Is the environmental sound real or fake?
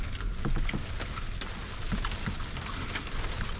real